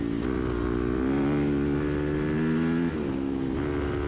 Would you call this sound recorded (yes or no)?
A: yes